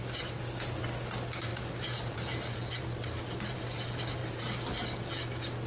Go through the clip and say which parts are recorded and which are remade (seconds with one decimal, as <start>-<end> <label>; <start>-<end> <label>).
0.0-1.5 recorded; 1.5-3.8 remade; 3.8-4.2 recorded; 4.2-4.7 remade; 4.7-5.7 recorded